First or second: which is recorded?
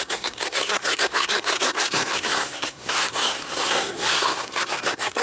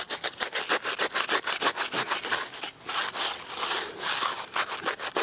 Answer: second